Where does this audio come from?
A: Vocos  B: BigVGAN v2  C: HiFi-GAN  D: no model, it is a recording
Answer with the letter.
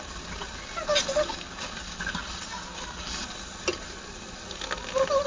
D